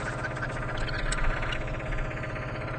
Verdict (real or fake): real